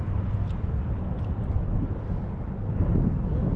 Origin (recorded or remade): recorded